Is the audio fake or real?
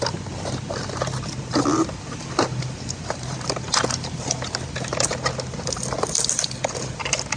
real